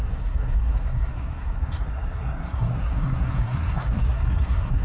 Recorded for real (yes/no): no